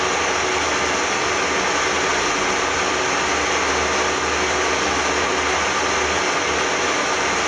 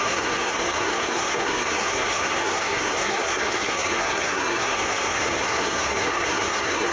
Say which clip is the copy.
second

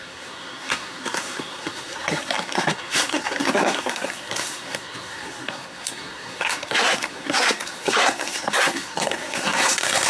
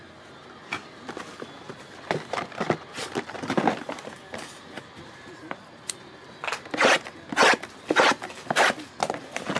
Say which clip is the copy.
first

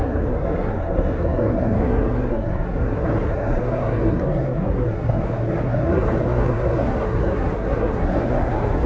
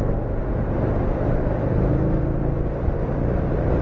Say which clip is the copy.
first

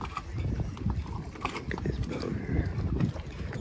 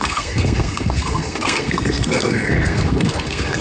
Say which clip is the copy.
second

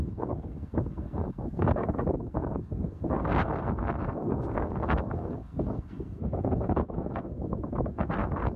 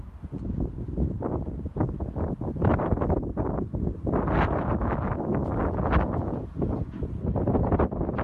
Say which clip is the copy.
first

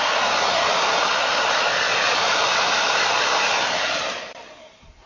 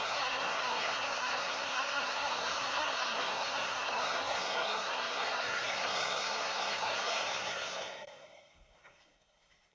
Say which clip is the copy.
second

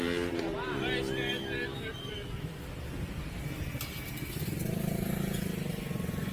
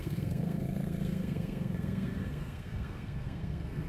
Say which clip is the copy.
second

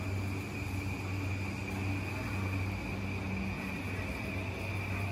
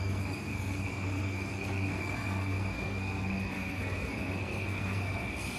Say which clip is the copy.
second